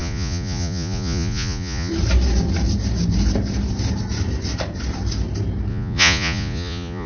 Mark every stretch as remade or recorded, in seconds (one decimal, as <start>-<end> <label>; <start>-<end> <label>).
0.0-1.9 remade; 1.9-5.7 recorded; 5.7-7.1 remade